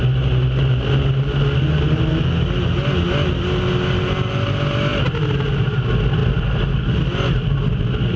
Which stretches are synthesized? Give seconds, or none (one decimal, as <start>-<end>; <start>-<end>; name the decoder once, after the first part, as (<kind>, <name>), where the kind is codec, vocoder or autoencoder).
none